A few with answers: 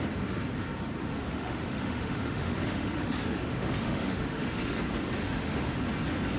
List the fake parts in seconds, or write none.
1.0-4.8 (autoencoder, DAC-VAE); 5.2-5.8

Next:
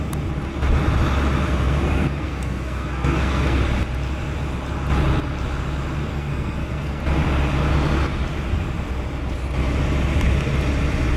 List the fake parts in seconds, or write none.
1.4-3.6 (codec, SNAC); 6.1-7.0

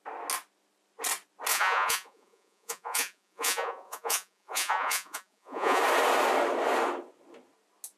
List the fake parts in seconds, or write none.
1.5-5.8 (vocoder, Vocos)

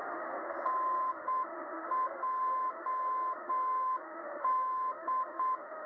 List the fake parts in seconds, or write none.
0.0-0.4 (autoencoder, DAC-VAE); 1.1-5.9

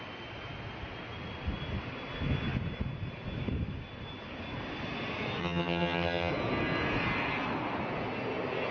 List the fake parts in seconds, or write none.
5.4-6.3 (vocoder, HiFi-GAN)

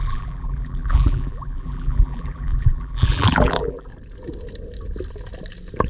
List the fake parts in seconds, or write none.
0.0-3.9 (vocoder, BigVGAN v2)

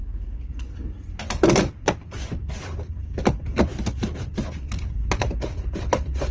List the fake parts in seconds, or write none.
none

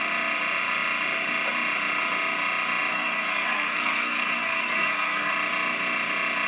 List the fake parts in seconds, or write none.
2.9-5.3 (codec, SNAC)